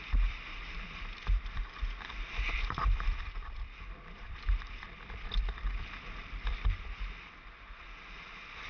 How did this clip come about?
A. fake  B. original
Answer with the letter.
A